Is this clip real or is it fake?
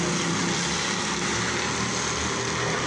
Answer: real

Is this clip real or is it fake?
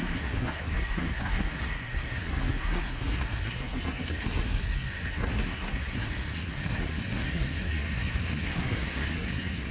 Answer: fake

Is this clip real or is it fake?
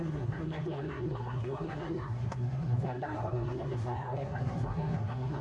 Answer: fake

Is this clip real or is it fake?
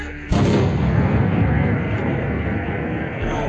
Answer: fake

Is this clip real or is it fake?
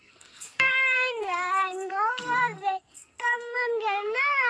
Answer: fake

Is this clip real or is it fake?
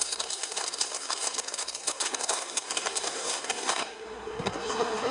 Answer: fake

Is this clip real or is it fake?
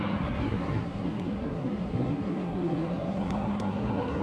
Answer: fake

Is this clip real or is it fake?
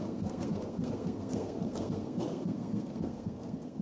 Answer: fake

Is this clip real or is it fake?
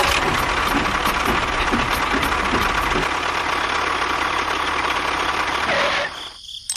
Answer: real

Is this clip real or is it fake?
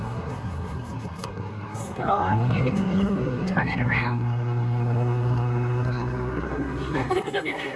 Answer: fake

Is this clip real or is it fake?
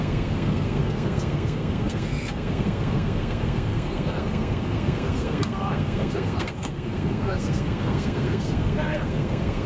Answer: fake